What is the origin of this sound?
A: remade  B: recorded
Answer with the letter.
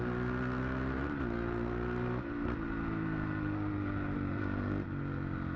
B